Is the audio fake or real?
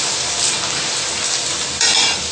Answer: real